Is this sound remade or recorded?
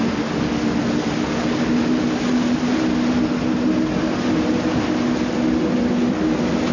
recorded